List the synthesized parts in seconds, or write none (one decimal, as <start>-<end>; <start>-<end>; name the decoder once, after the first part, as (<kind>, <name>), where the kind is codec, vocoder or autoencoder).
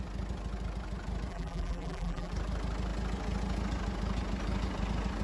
1.3-2.3 (vocoder, BigVGAN v2)